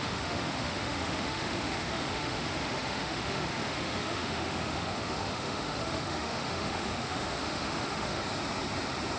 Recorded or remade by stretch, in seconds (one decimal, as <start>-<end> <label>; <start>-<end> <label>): 0.0-8.2 remade; 8.2-9.2 recorded